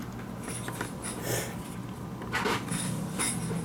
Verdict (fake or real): real